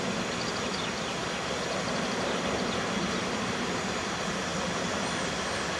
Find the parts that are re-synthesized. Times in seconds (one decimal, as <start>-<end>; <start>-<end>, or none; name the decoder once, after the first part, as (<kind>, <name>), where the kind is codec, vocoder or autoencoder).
none